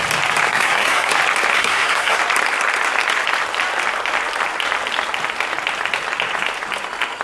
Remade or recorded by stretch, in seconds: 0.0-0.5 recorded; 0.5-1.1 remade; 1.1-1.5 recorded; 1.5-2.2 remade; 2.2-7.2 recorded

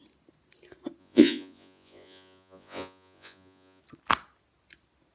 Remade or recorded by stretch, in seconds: 0.0-1.0 recorded; 1.0-3.8 remade; 3.8-5.1 recorded

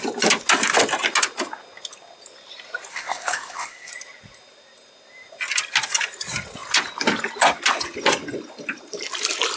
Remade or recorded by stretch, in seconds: 0.0-2.9 recorded; 2.9-3.9 remade; 3.9-9.6 recorded

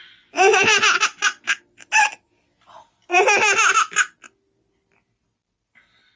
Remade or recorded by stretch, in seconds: 0.0-6.2 recorded

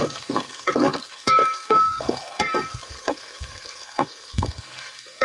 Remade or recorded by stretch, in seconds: 0.0-5.2 remade

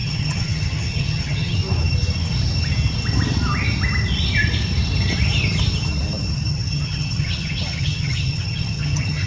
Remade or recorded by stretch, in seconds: 0.0-1.6 remade; 1.6-6.5 recorded; 6.5-9.3 remade